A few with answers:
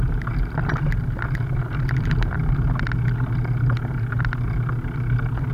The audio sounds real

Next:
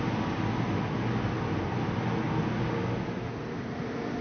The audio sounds real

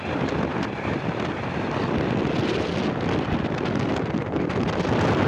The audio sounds real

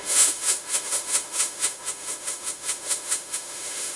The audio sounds fake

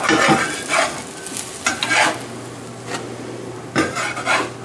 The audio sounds real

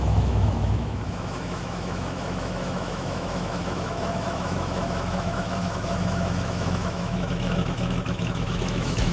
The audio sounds fake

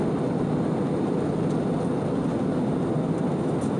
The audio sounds real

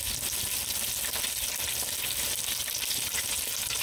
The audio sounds real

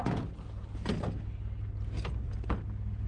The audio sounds real